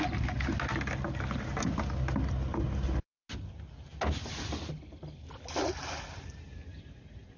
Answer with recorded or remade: recorded